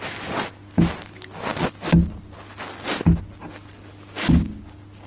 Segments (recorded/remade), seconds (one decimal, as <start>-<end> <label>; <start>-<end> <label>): 0.0-5.1 recorded